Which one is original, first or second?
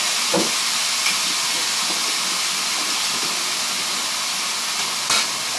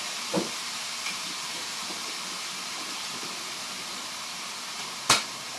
first